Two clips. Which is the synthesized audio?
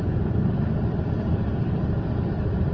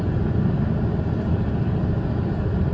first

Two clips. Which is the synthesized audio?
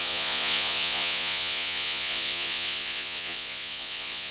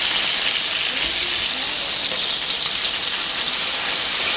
first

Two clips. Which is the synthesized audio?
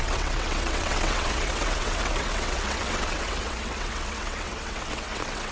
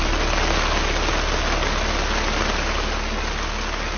first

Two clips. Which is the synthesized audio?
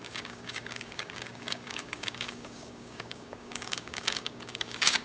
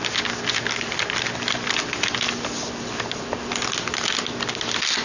first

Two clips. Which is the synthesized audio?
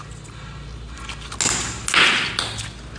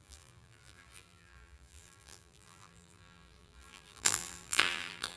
second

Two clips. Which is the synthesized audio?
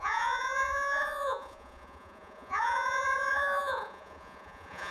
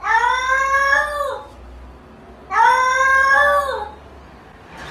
first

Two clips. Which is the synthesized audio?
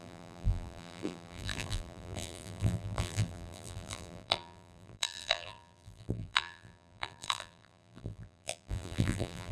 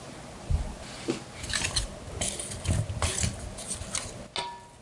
first